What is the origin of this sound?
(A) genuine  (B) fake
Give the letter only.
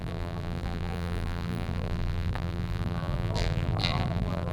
B